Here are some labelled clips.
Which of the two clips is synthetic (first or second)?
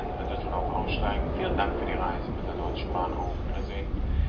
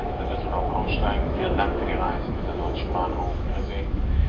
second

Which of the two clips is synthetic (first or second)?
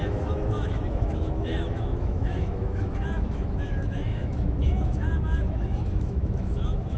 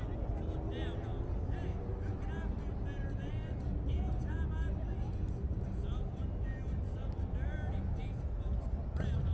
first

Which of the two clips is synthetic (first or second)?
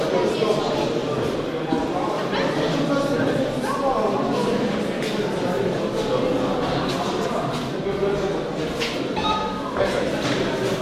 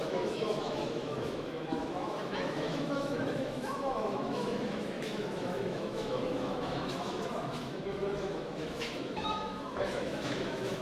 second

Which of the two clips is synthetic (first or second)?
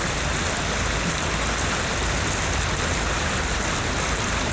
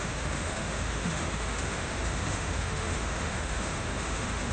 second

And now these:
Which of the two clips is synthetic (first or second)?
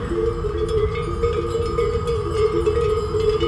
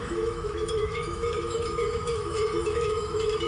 second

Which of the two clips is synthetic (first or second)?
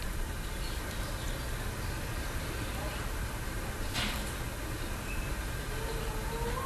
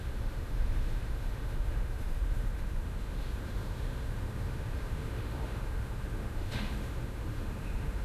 second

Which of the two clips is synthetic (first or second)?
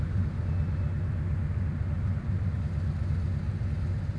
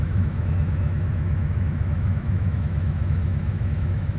second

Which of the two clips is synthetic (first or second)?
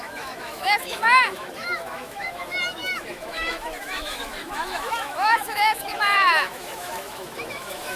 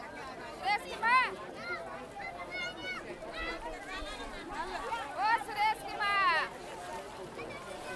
first